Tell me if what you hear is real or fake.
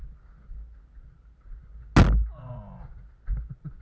real